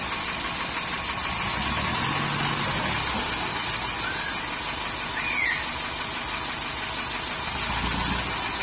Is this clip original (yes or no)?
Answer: yes